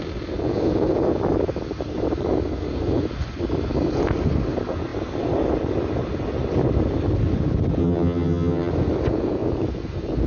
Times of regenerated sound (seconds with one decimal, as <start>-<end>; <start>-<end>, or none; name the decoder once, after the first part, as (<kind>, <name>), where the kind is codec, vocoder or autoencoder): 7.8-8.7 (vocoder, HiFi-GAN)